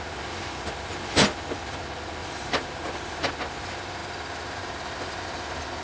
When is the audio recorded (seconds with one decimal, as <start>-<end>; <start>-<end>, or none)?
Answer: 0.0-2.2; 3.3-5.8